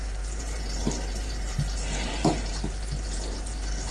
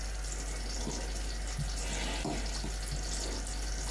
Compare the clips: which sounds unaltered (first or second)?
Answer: second